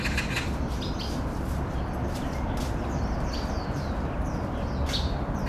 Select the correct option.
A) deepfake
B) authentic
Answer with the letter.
B